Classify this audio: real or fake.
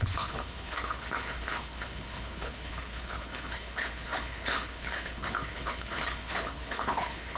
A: fake